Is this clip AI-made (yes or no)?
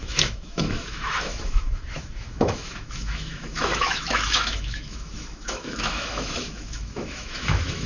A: yes